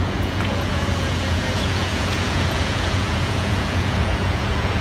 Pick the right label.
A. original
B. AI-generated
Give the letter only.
B